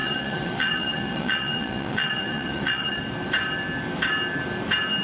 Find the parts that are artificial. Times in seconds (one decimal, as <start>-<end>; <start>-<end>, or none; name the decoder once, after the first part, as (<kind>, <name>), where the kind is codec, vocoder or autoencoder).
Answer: 0.0-3.0 (vocoder, Vocos)